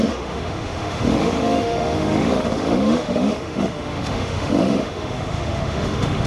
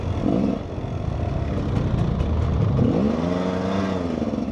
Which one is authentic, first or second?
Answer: second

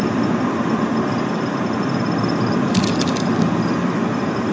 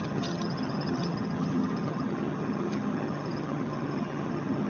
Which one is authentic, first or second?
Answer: first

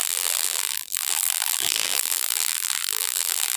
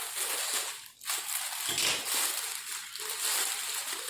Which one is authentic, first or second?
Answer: second